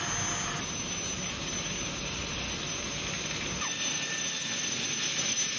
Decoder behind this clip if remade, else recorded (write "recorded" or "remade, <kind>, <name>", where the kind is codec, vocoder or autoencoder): recorded